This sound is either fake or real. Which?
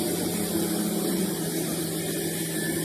real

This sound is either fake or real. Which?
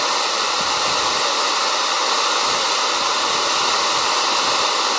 real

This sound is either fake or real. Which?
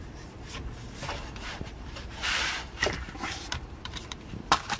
fake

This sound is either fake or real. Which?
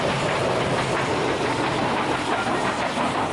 real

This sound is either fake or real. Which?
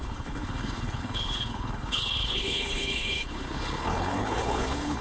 fake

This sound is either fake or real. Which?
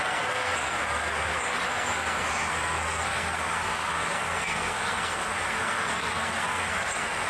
fake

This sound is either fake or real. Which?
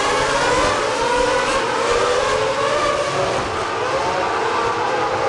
real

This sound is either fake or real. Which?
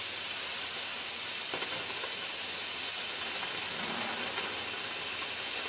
real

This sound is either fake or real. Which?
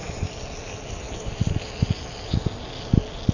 real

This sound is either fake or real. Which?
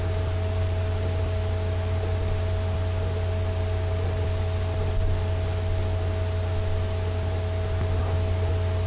real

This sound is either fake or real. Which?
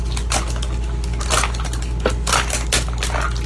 real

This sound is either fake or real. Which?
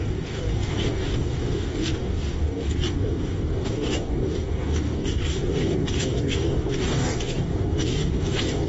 fake